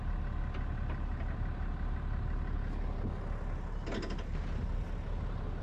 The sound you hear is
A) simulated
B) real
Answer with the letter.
B